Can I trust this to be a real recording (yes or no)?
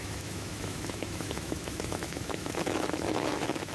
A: no